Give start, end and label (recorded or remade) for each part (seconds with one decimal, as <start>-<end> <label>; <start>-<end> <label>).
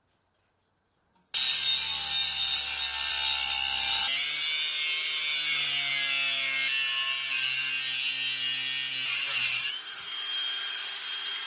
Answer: 0.0-11.5 recorded